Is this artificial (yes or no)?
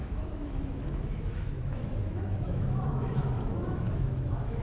yes